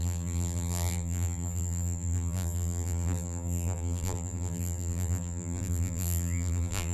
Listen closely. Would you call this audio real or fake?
fake